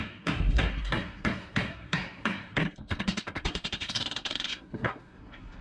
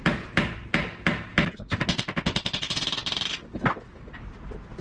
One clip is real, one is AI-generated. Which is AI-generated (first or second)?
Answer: first